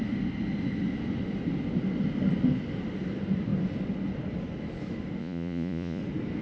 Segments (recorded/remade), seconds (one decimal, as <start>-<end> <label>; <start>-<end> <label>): 0.0-5.2 recorded; 5.2-6.0 remade; 6.0-6.4 recorded